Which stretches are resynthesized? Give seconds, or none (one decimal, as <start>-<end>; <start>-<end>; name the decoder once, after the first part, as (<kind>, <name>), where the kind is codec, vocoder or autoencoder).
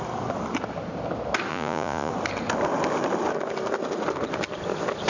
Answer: 1.5-2.1 (vocoder, Vocos)